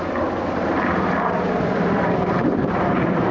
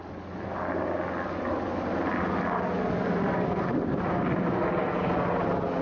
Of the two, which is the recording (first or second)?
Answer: second